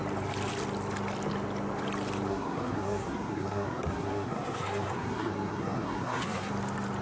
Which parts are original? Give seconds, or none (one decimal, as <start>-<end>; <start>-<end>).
0.0-2.3; 6.5-7.0